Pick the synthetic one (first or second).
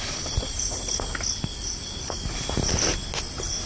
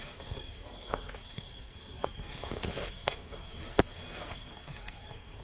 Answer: second